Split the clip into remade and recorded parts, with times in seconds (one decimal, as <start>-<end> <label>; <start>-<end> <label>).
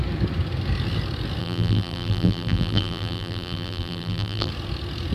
0.0-1.4 recorded; 1.4-4.5 remade; 4.5-5.1 recorded